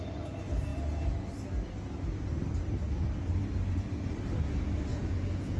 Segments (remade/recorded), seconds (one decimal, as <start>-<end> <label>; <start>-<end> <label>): 0.0-4.9 recorded; 4.9-5.6 remade